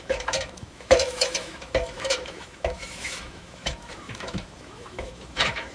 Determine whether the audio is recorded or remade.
remade